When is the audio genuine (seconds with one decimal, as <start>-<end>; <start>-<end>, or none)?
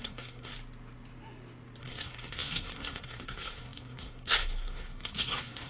0.5-1.8